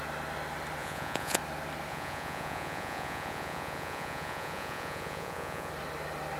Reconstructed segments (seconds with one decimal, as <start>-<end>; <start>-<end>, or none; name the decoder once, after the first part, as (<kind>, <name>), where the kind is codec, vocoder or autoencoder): 0.8-1.4 (vocoder, Vocos); 1.9-5.7